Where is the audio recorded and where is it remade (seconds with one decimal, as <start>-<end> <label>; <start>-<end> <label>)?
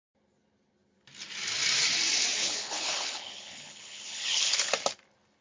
0.0-2.4 recorded; 2.4-4.7 remade; 4.7-5.4 recorded